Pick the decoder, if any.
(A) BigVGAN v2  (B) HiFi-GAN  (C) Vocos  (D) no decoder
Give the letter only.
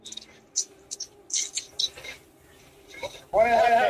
D